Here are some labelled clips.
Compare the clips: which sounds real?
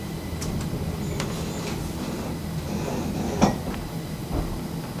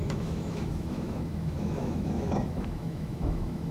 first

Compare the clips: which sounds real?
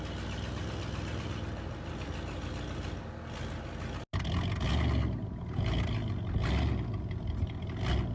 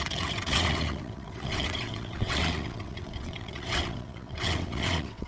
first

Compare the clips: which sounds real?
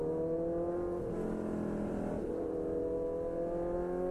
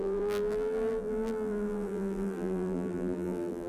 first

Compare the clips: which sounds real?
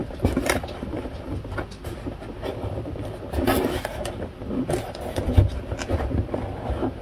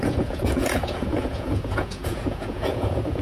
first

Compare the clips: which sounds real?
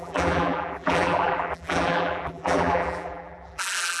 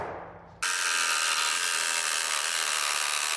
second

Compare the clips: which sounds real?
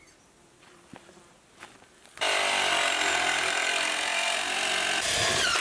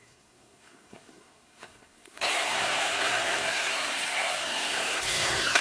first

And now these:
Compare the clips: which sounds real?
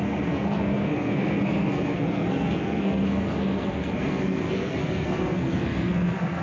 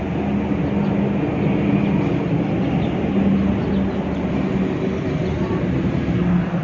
second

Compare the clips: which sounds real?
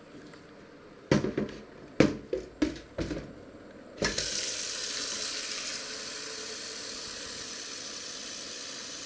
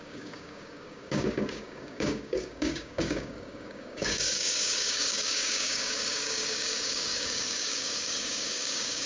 first